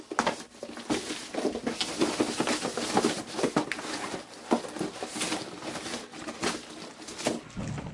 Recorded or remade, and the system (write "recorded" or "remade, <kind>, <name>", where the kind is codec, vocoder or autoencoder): recorded